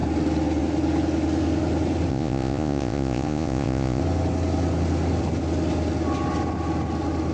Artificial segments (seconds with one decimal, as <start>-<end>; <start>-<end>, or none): 2.1-4.0